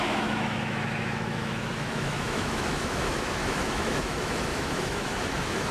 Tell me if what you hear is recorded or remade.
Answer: remade